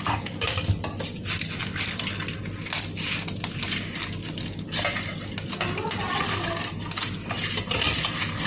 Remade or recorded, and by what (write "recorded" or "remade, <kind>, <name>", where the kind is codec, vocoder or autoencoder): recorded